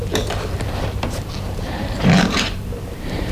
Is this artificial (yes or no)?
yes